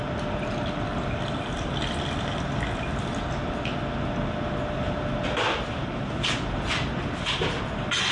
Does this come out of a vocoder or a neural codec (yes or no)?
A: no